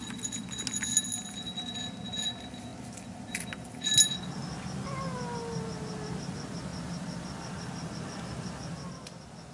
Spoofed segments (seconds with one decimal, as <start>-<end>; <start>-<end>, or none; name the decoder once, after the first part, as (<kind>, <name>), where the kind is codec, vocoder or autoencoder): none